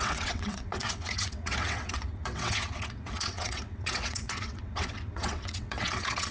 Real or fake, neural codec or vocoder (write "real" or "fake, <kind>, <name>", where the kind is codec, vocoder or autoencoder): fake, vocoder, WaveNeXt